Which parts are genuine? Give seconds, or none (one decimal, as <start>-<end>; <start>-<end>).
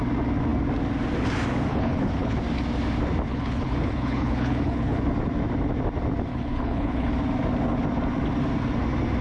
0.0-1.7; 2.4-3.3; 5.0-6.3; 7.1-9.2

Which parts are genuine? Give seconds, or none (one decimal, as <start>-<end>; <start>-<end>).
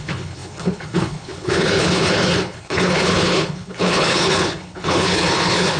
none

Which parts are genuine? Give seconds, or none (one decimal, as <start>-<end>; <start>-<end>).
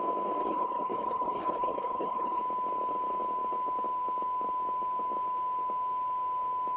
0.0-0.4; 2.4-6.8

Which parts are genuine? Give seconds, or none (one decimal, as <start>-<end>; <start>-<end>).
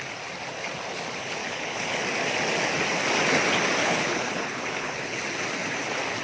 0.0-1.4; 2.0-3.8; 5.2-6.2